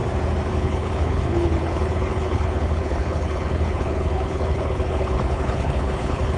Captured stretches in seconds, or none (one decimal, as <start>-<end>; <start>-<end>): 0.0-0.5